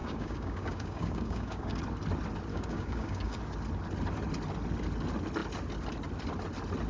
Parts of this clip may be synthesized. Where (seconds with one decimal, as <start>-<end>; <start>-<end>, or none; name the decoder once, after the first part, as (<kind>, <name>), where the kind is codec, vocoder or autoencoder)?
0.0-1.8 (codec, DAC); 2.5-3.4